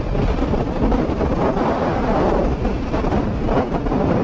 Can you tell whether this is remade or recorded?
recorded